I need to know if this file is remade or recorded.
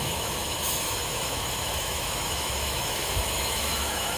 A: remade